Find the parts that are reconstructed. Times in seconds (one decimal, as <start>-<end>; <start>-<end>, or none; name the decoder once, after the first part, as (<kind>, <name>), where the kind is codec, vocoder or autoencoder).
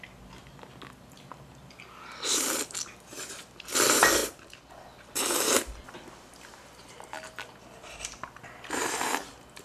none